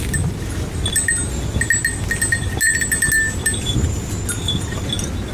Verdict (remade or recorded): recorded